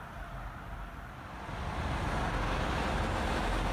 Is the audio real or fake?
real